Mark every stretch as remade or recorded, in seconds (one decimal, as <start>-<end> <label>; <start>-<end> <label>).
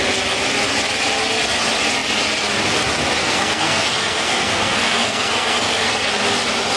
0.0-3.2 recorded; 3.2-6.1 remade; 6.1-6.8 recorded